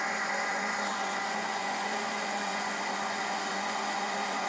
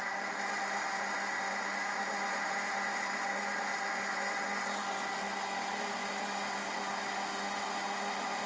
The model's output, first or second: first